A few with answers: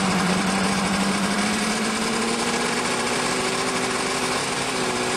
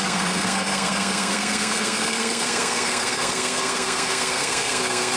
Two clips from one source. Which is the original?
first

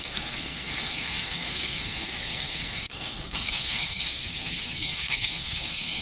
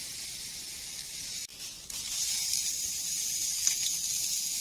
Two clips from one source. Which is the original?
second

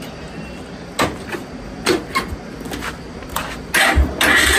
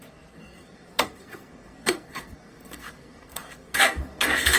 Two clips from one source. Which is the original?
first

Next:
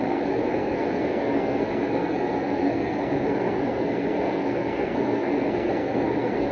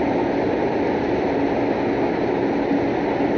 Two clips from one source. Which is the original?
second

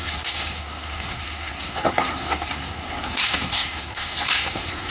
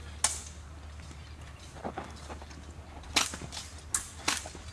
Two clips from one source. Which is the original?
second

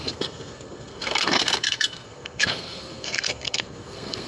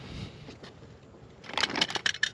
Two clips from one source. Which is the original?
second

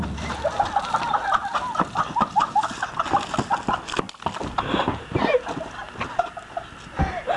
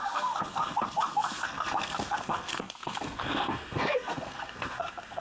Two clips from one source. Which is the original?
first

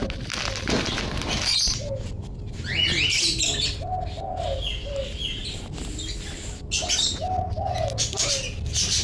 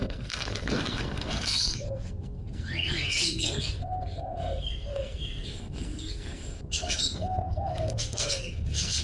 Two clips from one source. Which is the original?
first